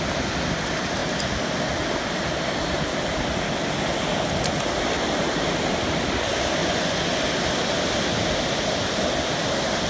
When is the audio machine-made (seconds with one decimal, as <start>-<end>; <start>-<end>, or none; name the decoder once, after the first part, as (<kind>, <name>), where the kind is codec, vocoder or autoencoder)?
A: 6.6-7.2 (vocoder, Vocos)